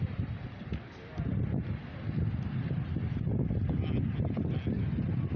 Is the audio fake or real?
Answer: real